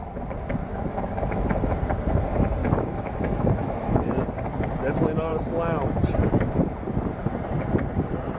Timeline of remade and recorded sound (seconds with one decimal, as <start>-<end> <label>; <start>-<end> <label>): 0.0-0.7 recorded; 0.7-1.7 remade; 1.7-2.6 recorded; 2.6-4.3 remade; 4.3-8.4 recorded